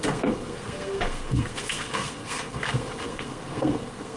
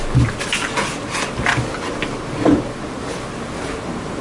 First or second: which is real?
second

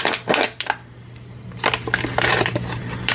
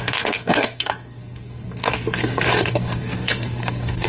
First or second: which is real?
first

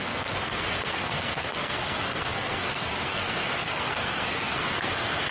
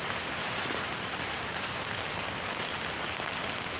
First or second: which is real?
second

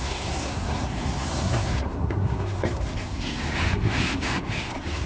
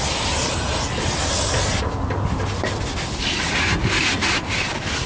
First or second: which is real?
second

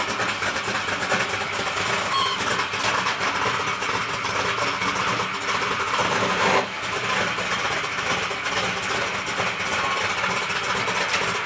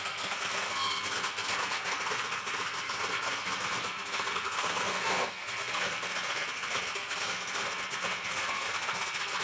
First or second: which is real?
first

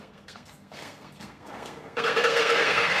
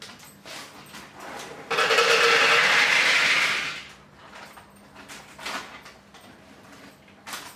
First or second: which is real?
second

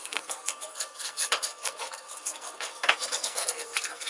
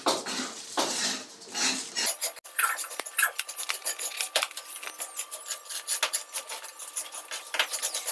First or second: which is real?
second